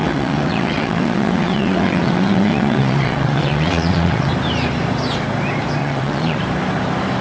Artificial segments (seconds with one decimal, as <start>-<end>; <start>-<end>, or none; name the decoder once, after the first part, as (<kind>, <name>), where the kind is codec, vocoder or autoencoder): 0.0-4.3 (vocoder, WaveNeXt); 5.8-6.4